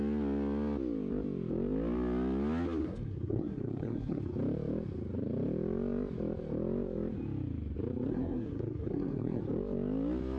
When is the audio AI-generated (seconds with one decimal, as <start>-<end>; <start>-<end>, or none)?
2.8-4.2; 8.1-9.4